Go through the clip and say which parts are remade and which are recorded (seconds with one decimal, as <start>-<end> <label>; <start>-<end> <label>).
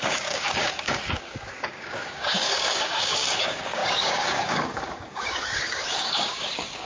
0.0-6.9 remade